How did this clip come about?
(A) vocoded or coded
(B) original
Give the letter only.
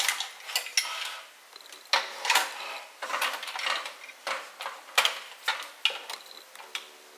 B